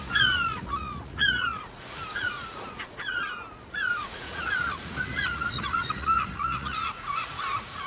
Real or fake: fake